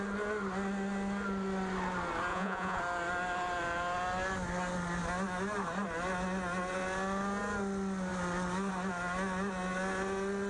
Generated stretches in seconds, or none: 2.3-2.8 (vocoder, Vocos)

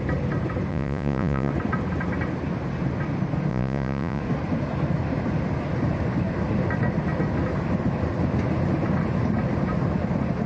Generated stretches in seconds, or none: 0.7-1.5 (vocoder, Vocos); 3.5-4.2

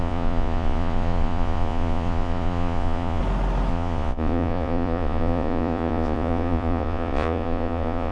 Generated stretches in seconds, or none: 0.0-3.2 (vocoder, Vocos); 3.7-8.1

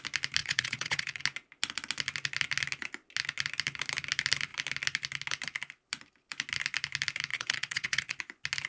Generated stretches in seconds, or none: 0.4-1.2 (vocoder, Vocos); 7.3-8.2

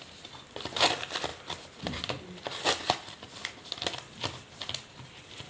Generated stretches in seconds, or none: none

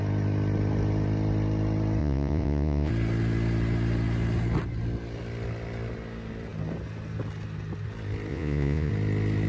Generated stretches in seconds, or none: 2.0-2.9 (vocoder, Vocos); 8.3-8.9

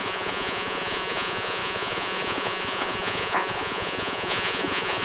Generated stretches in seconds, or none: 0.0-5.0 (vocoder, Vocos)

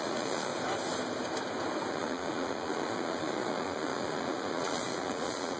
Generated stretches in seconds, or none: 0.0-0.5 (vocoder, Vocos); 1.9-5.6